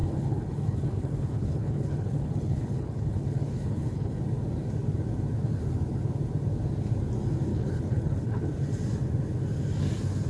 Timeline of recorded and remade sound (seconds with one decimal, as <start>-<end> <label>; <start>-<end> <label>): 0.0-4.2 remade; 4.2-7.5 recorded; 7.5-8.4 remade; 8.4-10.3 recorded